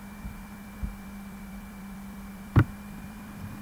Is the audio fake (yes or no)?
yes